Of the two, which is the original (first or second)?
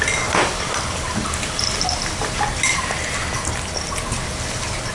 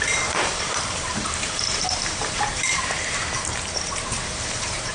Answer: first